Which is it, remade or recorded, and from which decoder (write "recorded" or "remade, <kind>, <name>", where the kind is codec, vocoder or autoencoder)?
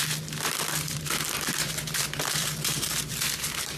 remade, vocoder, BigVGAN v2